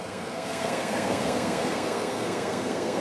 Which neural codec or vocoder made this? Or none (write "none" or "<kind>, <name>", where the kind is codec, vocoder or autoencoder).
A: codec, SNAC